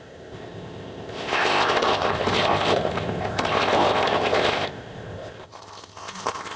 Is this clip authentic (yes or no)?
no